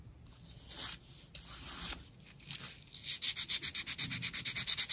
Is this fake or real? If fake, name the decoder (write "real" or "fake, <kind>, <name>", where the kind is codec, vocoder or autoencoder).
real